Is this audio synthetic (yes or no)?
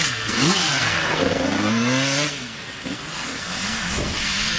yes